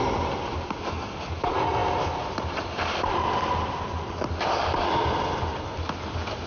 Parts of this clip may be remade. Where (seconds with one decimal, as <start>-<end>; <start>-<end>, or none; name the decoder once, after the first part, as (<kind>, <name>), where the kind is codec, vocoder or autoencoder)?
none